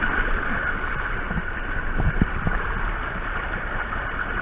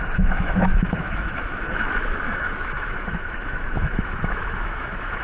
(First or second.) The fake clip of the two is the second